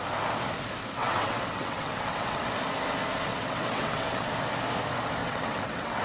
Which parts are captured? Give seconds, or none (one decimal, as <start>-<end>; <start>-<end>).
0.0-1.0; 2.5-3.3; 4.3-5.2